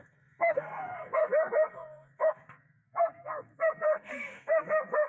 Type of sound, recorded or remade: remade